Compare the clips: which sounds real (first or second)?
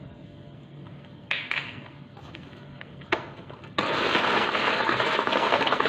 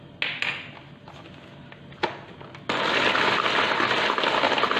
second